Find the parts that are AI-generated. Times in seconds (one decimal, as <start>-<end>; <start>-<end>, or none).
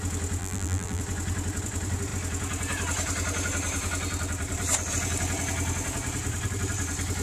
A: 0.4-1.0